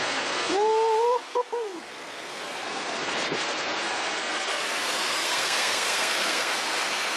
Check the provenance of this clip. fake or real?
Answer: fake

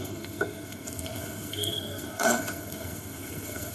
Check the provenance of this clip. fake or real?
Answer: fake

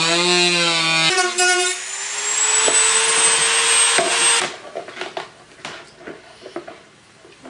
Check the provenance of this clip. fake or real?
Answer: real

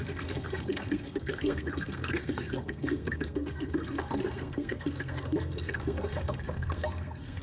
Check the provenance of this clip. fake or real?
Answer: fake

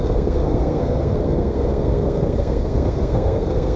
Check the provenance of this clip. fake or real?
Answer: fake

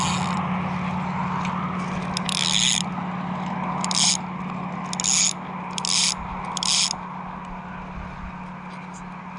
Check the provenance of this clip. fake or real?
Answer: real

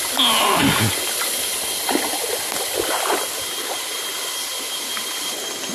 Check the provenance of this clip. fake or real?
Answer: real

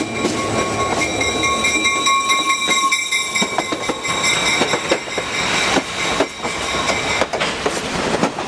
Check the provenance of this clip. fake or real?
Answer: real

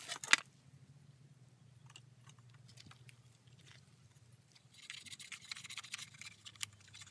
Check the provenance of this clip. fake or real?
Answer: real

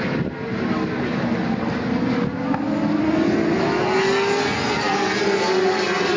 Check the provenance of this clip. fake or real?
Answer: real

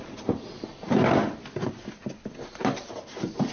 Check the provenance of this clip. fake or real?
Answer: real